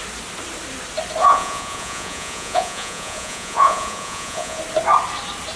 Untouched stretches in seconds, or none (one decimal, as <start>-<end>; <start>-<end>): 0.0-1.2; 4.6-5.6